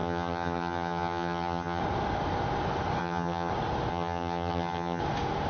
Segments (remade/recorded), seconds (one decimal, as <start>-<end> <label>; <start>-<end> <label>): 0.0-1.8 remade; 1.8-3.0 recorded; 3.0-3.5 remade; 3.5-3.9 recorded; 3.9-5.0 remade; 5.0-5.5 recorded